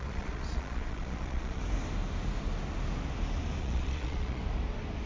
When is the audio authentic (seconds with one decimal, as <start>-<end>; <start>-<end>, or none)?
1.6-3.6; 4.4-5.1